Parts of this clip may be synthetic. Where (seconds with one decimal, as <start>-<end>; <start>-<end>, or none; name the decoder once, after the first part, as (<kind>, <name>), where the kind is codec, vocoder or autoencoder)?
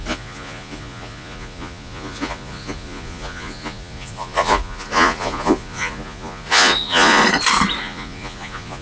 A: 0.0-7.2 (vocoder, Vocos); 7.8-8.8